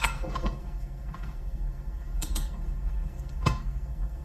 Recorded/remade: remade